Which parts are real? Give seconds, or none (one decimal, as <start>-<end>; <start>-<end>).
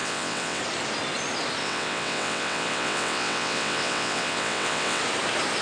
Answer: 0.6-1.6; 5.0-5.6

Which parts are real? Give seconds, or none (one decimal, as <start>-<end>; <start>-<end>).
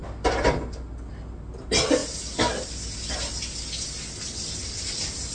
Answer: 0.0-5.3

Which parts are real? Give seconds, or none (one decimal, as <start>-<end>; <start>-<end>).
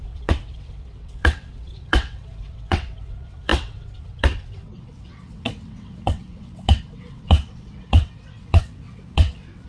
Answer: none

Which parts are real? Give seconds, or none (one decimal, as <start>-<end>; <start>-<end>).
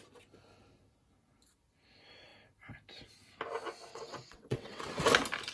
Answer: 0.0-3.9; 4.8-5.5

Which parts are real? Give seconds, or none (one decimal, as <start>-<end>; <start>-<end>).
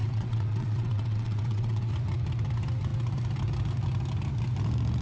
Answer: 1.9-5.0